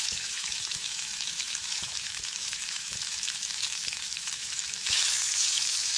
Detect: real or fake fake